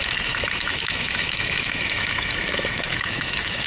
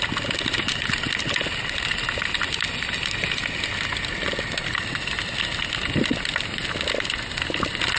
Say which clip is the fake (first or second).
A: first